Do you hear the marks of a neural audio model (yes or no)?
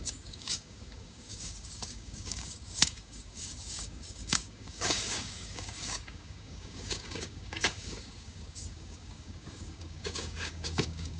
yes